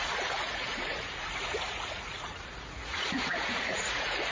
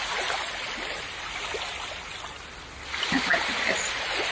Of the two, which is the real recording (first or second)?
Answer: second